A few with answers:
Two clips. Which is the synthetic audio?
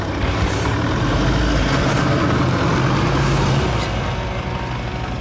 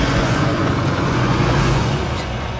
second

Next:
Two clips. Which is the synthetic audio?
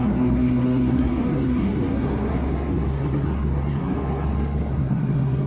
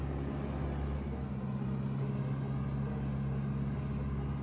first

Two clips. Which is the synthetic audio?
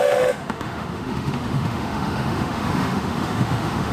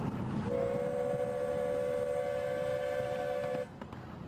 first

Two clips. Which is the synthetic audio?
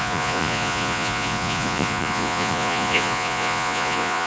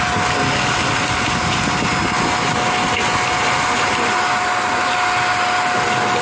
first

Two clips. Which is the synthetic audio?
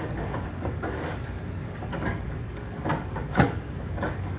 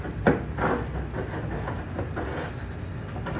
first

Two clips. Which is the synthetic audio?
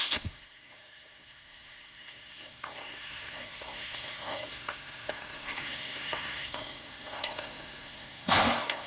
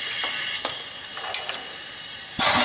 first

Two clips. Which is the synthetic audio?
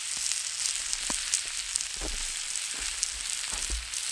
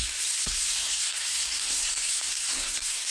second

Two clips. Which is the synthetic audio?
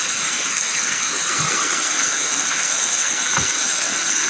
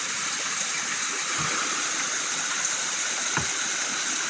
first